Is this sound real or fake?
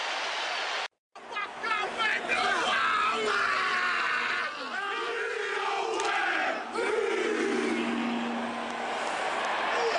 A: real